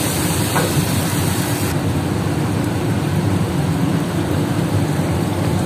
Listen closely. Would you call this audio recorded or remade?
remade